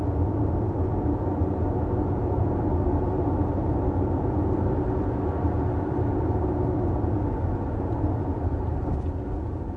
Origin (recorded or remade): recorded